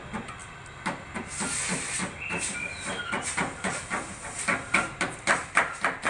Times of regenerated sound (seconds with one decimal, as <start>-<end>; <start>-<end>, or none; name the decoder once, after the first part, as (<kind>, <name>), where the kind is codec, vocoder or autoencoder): 2.7-3.6 (vocoder, BigVGAN v2)